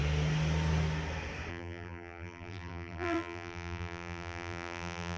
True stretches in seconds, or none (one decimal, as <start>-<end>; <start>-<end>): 0.0-1.5